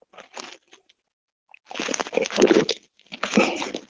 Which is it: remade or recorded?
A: recorded